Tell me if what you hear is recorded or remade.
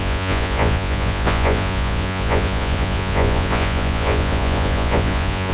remade